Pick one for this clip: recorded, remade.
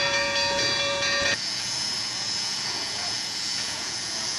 remade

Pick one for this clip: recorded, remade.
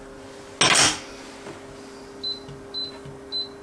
recorded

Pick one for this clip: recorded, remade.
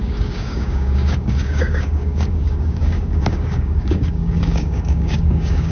remade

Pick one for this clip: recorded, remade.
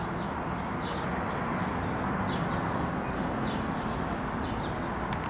recorded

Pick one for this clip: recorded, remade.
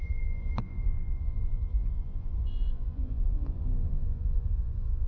remade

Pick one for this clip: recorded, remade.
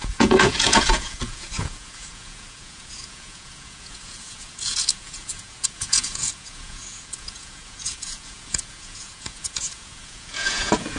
remade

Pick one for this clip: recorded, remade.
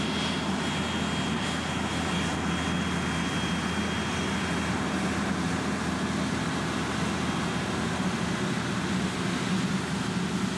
recorded